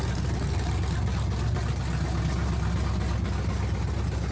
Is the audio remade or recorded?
recorded